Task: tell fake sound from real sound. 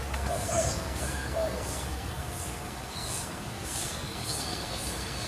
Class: fake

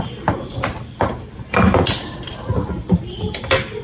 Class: fake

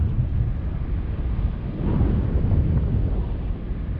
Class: real